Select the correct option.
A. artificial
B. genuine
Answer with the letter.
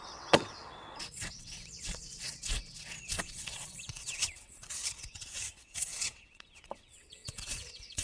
A